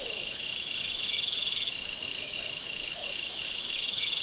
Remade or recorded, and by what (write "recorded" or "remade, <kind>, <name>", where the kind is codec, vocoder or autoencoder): remade, autoencoder, DAC-VAE